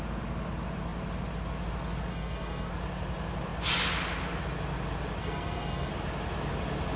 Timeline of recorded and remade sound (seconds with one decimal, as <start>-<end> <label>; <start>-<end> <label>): 0.0-2.1 recorded; 2.1-2.7 remade; 2.7-5.2 recorded; 5.2-5.9 remade; 5.9-7.0 recorded